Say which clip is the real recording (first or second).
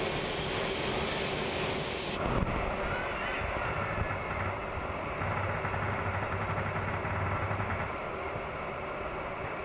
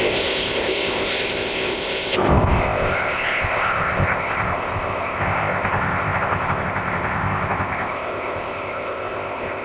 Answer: first